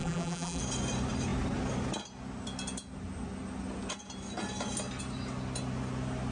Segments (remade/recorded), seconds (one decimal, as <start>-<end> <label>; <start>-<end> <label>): 0.0-0.6 remade; 0.6-6.3 recorded